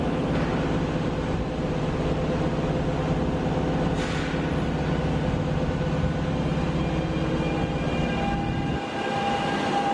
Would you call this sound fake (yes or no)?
no